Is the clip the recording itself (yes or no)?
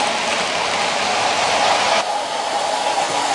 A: yes